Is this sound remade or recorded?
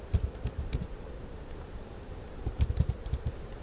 remade